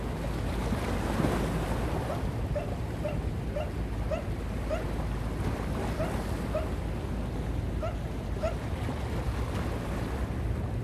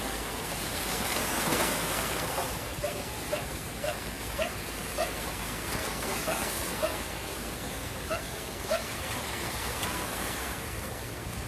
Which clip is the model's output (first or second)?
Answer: second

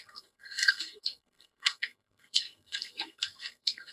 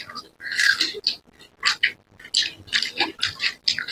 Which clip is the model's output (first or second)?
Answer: first